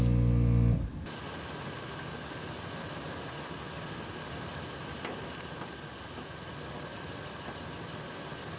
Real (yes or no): yes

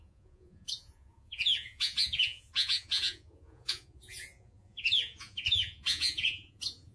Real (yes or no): no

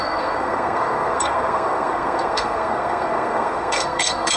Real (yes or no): no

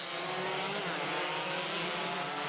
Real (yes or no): yes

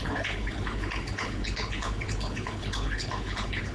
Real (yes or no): no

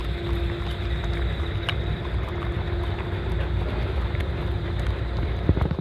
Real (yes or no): yes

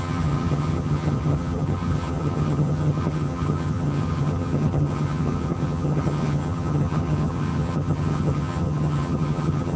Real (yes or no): no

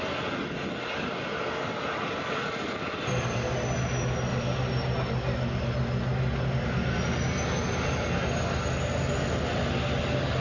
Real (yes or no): yes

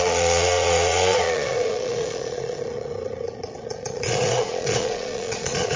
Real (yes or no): no